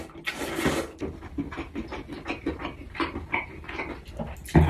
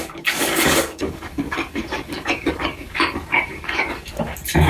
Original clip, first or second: first